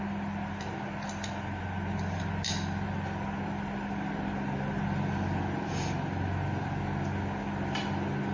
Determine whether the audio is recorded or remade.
recorded